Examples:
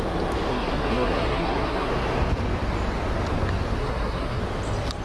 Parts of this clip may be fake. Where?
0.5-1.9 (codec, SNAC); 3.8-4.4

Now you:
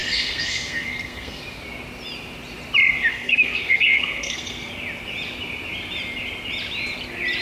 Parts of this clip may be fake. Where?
0.0-1.4 (codec, SNAC); 3.1-4.7